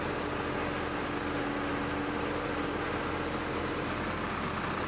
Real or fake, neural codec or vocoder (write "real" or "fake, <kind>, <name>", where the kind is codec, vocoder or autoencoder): real